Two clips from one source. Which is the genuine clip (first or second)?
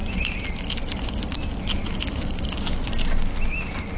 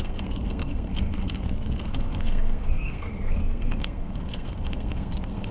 first